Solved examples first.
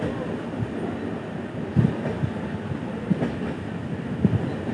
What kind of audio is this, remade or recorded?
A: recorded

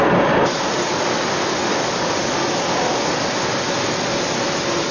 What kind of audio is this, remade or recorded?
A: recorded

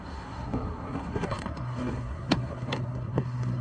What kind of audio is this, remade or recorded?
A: remade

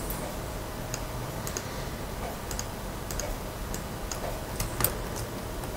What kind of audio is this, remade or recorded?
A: recorded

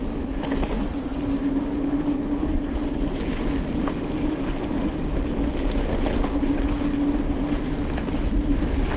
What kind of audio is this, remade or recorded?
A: recorded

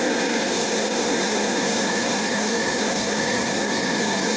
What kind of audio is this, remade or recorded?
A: remade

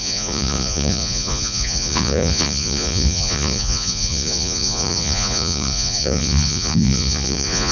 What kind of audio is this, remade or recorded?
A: remade